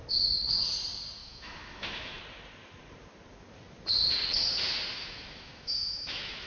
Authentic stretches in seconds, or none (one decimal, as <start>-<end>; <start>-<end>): 0.0-1.2; 2.2-4.9